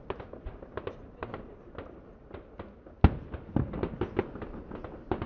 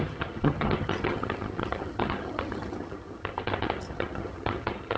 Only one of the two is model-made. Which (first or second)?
second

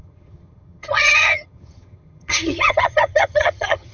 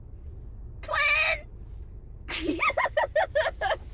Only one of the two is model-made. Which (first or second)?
first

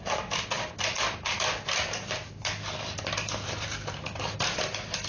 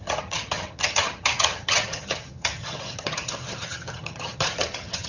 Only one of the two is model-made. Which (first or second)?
second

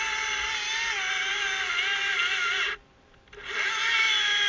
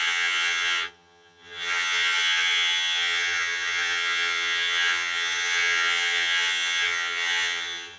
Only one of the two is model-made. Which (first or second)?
second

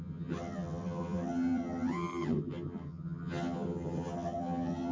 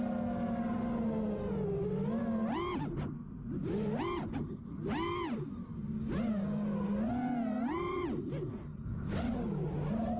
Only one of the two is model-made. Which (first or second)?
first